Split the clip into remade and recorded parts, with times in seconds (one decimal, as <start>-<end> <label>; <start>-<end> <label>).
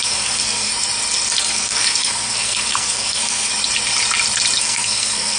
0.0-0.7 remade; 0.7-1.4 recorded; 1.4-3.5 remade; 3.5-4.6 recorded; 4.6-5.4 remade